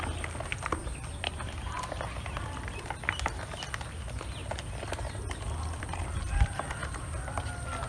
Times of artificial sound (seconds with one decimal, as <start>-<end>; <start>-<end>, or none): none